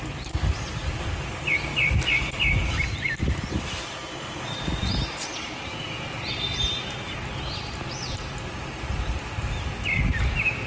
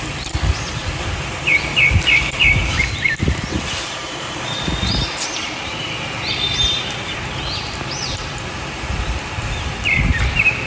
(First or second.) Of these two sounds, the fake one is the second